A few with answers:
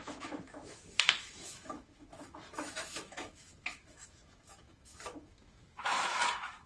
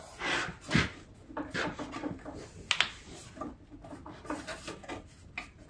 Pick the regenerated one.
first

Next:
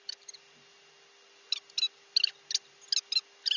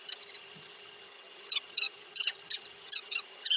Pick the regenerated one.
second